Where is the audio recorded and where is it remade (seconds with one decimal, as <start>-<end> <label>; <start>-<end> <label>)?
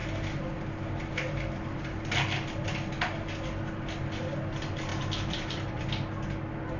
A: 0.0-4.9 recorded; 4.9-5.8 remade; 5.8-6.8 recorded